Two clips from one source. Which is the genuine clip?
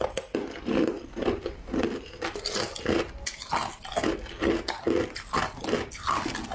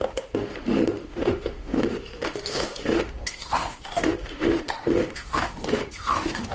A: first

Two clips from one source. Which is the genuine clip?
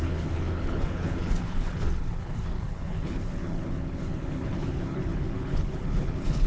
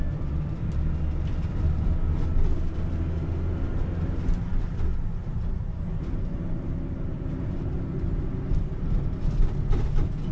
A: second